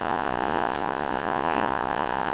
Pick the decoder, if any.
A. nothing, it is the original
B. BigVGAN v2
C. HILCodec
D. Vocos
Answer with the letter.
D